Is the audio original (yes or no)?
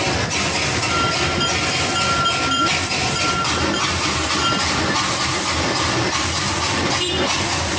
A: yes